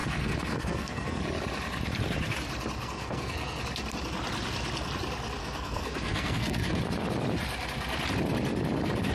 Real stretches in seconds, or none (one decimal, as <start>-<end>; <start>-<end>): 1.2-2.8; 3.6-5.4; 6.8-9.1